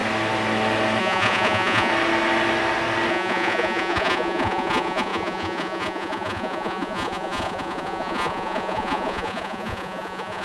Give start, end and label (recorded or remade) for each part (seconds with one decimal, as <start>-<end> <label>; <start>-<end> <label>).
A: 0.0-1.0 recorded; 1.0-1.9 remade; 1.9-3.1 recorded; 3.1-10.4 remade